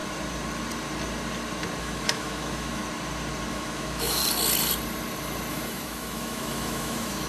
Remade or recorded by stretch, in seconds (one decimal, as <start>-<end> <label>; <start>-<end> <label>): 0.0-1.8 recorded; 1.8-2.8 remade; 2.8-3.5 recorded; 3.5-4.2 remade; 4.2-5.5 recorded; 5.5-7.3 remade